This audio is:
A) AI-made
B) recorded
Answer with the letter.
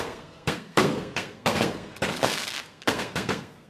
A